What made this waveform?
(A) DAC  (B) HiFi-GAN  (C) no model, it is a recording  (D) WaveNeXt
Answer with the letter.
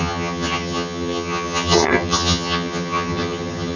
B